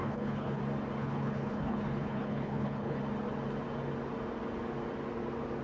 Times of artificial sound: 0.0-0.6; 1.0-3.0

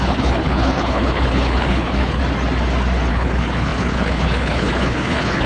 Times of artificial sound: 0.0-2.2; 3.1-5.5

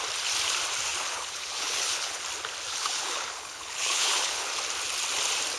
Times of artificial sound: 0.9-2.2; 2.7-4.5

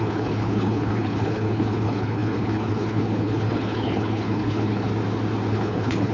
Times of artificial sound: 0.0-4.9; 5.5-6.1